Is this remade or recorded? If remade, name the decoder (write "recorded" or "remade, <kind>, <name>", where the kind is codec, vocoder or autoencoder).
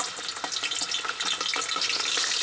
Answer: recorded